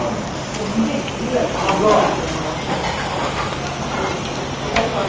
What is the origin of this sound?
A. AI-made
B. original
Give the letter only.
B